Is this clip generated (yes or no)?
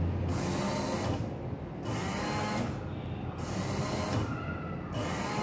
no